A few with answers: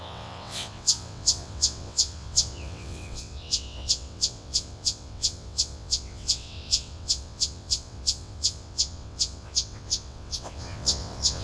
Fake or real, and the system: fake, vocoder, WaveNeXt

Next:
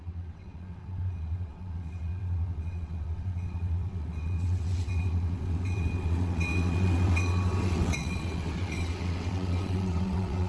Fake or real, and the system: fake, vocoder, WaveNeXt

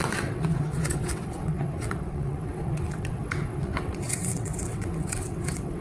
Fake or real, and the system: fake, vocoder, WaveNeXt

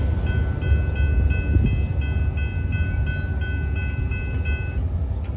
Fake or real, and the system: real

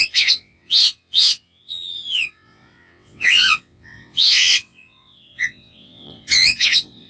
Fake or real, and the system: fake, vocoder, WaveNeXt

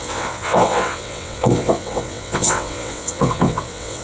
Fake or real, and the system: fake, vocoder, WaveNeXt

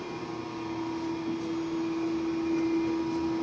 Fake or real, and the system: real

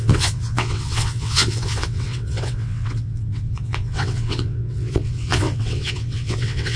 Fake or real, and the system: fake, vocoder, WaveNeXt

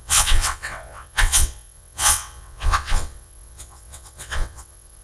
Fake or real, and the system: fake, vocoder, WaveNeXt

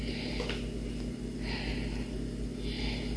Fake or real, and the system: real